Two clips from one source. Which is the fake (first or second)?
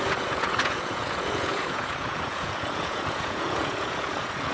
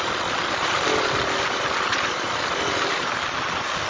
first